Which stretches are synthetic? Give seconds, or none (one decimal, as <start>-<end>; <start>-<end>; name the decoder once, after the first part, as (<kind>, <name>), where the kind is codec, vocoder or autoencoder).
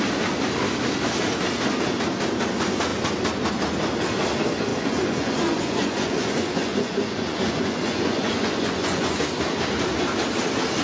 4.7-9.2 (vocoder, Vocos)